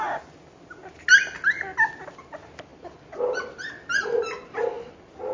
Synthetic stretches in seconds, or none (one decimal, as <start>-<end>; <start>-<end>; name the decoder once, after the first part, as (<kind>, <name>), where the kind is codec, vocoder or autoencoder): 2.7-3.7 (vocoder, BigVGAN v2)